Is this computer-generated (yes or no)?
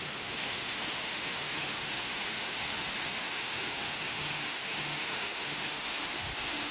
yes